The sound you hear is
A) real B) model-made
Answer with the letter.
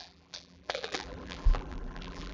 B